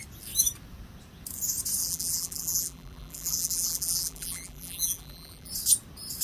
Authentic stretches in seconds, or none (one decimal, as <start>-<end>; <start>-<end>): 0.0-1.8; 5.5-6.2